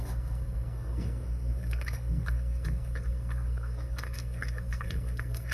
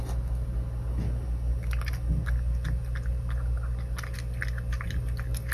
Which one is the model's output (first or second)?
first